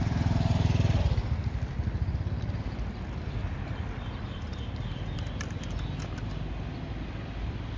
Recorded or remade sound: recorded